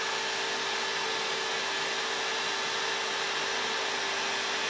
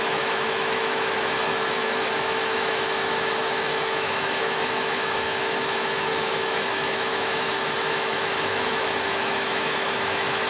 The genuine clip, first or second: first